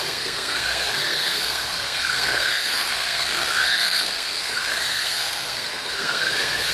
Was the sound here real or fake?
fake